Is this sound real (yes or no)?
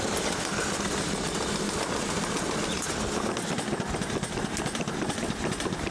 yes